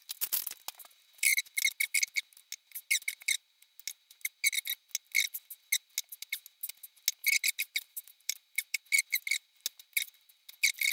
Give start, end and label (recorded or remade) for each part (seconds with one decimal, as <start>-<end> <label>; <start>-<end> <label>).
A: 0.0-7.2 recorded; 7.2-8.8 remade; 8.8-10.9 recorded